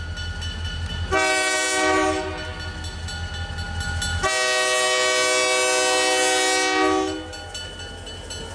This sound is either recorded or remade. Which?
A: recorded